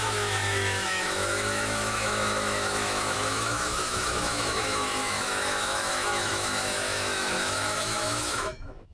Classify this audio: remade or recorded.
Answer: remade